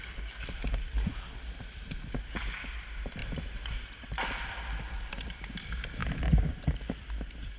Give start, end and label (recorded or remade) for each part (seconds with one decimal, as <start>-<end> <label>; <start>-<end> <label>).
0.0-3.2 recorded; 3.2-4.2 remade; 4.2-6.0 recorded; 6.0-6.8 remade; 6.8-7.6 recorded